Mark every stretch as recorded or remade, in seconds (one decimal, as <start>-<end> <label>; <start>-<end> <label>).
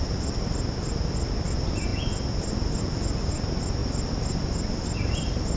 0.0-5.6 recorded